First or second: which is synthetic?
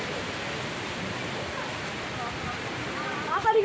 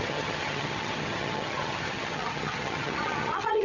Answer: second